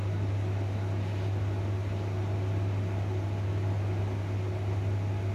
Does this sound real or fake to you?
real